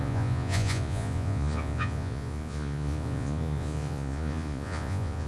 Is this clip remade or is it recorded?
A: remade